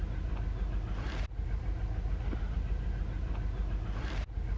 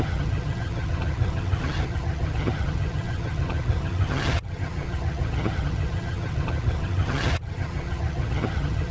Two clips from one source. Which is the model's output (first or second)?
second